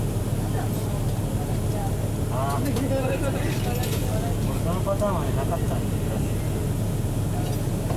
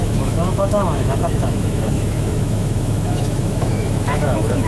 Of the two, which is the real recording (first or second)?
first